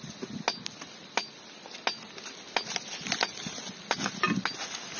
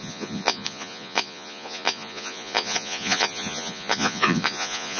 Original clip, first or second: first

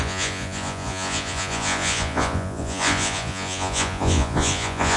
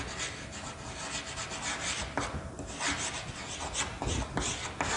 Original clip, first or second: second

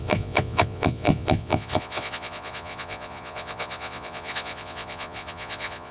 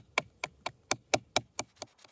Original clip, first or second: second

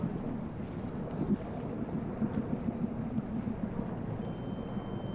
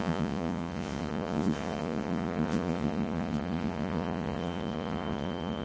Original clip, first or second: first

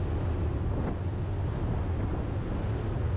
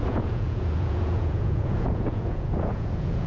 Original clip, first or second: first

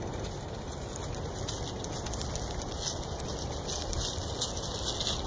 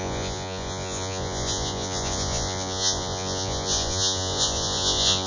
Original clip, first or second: first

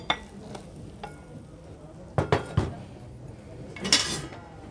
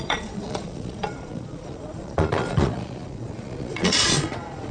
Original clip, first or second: first